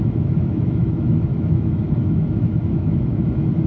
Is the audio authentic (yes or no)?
no